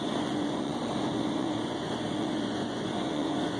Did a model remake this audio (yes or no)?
yes